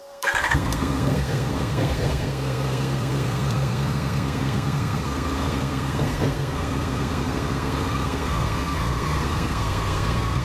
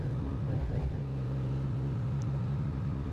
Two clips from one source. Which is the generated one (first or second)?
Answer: first